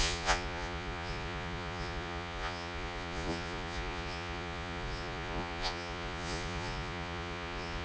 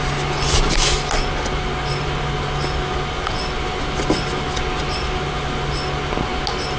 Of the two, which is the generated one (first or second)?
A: first